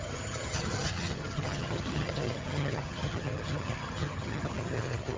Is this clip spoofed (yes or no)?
yes